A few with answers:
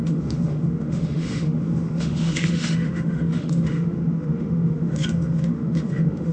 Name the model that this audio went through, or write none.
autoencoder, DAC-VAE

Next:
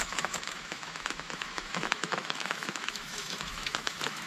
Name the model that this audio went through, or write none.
autoencoder, DAC-VAE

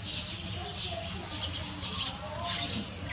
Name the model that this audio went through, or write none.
none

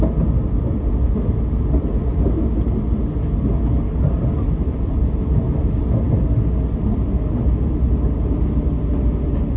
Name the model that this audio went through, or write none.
none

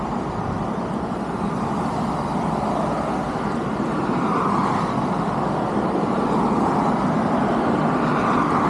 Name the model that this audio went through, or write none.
none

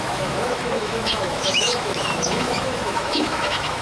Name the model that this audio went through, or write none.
autoencoder, DAC-VAE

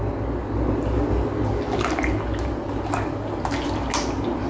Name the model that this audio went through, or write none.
none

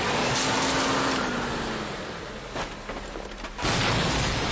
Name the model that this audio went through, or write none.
none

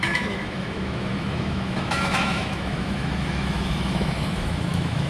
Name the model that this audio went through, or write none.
autoencoder, DAC-VAE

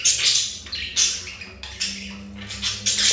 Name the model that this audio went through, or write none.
none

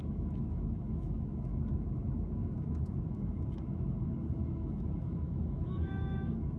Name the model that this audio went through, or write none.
autoencoder, DAC-VAE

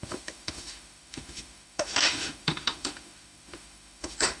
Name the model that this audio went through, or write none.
autoencoder, DAC-VAE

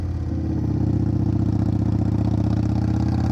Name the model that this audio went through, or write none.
none